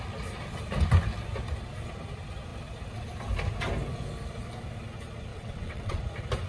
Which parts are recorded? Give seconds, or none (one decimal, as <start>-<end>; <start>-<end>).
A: 0.0-5.3; 6.0-6.5

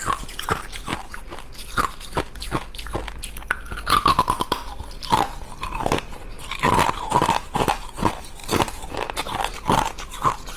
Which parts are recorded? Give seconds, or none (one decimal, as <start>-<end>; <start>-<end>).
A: 0.0-10.6

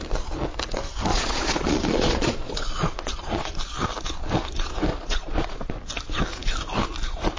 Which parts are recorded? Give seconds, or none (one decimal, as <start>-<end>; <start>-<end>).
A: 0.0-1.1; 3.5-4.9; 5.7-7.4

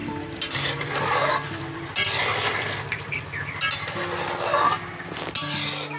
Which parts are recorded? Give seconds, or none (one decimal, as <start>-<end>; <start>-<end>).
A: 3.2-6.0

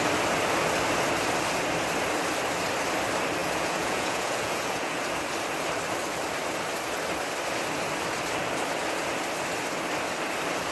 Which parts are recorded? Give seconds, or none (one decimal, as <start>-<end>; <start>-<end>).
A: 0.0-3.4; 5.0-10.7

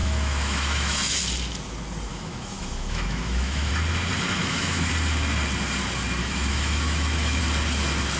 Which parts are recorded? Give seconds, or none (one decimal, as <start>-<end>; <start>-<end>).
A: 1.2-2.1; 3.7-4.4; 4.9-6.2; 7.4-8.2

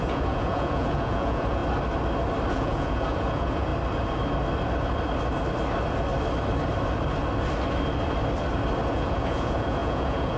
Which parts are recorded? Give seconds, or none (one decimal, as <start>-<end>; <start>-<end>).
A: 1.6-2.5; 3.7-8.9

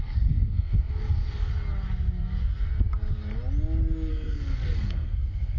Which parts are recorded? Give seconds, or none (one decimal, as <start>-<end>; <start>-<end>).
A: 1.5-4.1